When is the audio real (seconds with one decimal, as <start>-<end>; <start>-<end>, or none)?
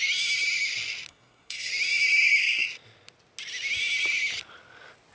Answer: 0.0-1.1; 1.7-5.1